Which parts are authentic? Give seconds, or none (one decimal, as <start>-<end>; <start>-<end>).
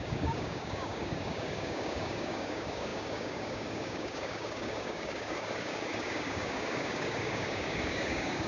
none